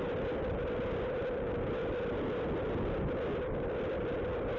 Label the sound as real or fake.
real